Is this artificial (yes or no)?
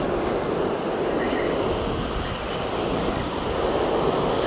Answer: no